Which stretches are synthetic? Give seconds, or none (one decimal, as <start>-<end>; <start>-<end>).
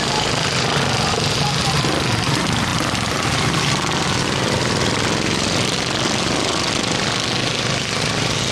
none